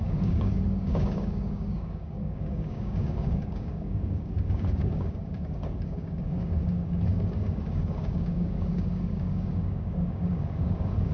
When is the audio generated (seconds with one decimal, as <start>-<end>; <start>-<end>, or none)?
0.0-11.1